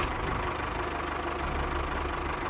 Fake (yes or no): no